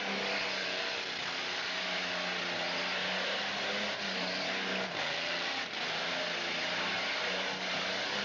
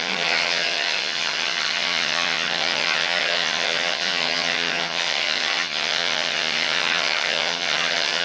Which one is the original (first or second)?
first